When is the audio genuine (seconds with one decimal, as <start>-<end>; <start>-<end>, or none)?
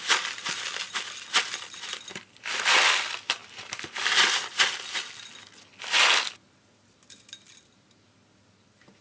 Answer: 0.0-9.0